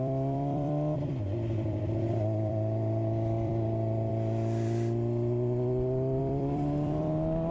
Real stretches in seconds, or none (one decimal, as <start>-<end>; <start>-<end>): 4.1-6.2